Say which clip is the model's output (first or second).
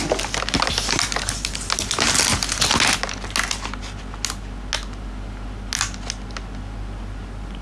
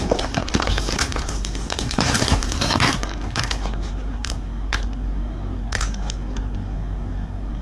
second